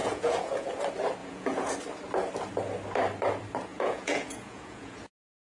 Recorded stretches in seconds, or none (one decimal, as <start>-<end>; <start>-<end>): 0.7-1.2; 1.7-3.7; 5.0-5.6